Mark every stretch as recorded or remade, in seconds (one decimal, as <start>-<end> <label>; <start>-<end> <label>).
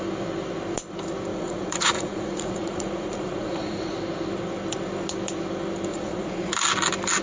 0.0-1.3 recorded; 1.3-3.9 remade; 3.9-5.9 recorded; 5.9-6.5 remade; 6.5-7.2 recorded